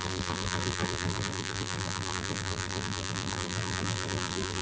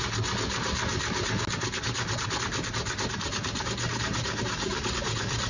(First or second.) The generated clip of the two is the first